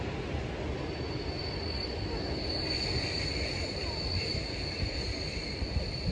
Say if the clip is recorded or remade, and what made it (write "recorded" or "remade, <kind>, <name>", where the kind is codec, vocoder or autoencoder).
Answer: recorded